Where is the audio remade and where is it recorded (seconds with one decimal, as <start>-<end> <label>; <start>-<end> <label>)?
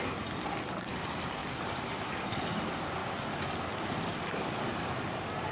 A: 0.0-1.4 recorded; 1.4-2.2 remade; 2.2-5.5 recorded